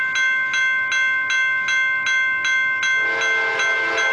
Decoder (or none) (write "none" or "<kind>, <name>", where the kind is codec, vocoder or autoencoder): none